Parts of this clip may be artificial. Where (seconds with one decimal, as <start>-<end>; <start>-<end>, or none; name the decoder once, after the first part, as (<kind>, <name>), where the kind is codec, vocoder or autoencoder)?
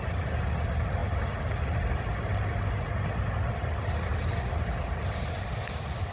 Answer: none